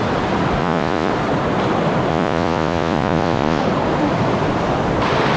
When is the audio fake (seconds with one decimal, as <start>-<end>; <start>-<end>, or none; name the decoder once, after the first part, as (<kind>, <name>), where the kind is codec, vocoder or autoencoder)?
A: 0.6-1.1 (vocoder, Vocos); 2.1-3.6